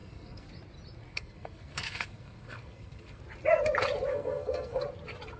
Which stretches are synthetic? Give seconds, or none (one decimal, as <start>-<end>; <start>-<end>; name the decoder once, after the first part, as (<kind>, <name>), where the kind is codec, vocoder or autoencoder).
0.0-0.5 (codec, SNAC); 1.1-3.2; 4.1-4.8